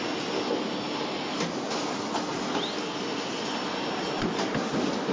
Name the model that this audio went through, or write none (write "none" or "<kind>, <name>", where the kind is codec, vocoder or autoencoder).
none